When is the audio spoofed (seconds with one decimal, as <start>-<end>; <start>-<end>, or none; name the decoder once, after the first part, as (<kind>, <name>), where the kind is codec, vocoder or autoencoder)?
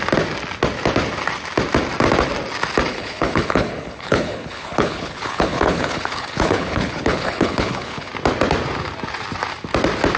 2.9-8.1 (codec, HILCodec)